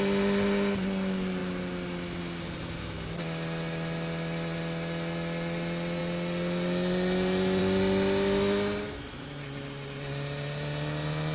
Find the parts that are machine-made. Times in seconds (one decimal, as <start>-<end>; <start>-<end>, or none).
none